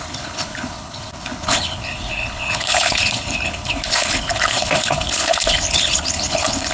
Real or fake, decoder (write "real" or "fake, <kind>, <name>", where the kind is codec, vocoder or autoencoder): fake, codec, HILCodec